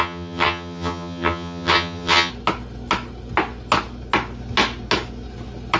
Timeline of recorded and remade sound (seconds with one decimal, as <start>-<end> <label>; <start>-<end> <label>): 0.0-2.3 remade; 2.3-5.8 recorded